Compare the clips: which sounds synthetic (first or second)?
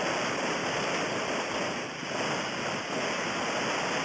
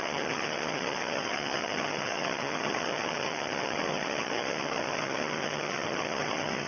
second